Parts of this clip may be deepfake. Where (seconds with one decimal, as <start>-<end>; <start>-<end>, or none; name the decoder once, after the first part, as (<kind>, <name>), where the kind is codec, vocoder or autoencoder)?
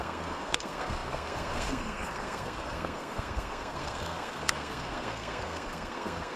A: 0.0-6.4 (codec, SNAC)